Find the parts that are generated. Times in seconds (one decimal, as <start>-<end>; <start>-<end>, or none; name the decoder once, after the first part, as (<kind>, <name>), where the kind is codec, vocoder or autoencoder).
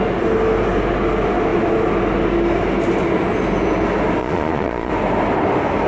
4.2-4.9 (vocoder, Vocos)